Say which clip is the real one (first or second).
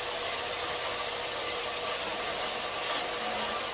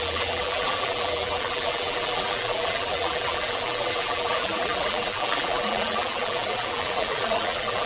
first